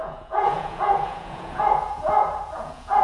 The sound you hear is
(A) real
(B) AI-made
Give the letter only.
B